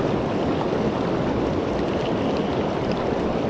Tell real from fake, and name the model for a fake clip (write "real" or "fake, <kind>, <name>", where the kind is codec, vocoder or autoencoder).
real